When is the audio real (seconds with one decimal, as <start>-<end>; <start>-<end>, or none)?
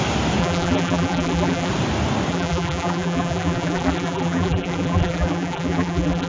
0.0-0.4; 1.7-2.3